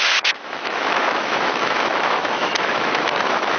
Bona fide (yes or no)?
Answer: no